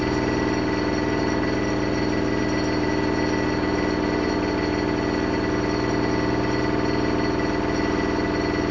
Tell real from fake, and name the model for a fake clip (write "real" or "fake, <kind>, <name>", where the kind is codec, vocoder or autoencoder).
real